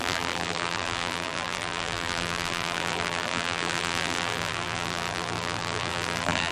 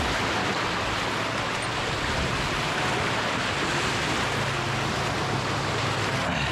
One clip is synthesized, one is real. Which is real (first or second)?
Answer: second